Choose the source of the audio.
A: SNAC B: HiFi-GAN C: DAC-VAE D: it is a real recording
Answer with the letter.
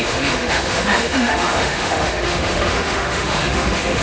C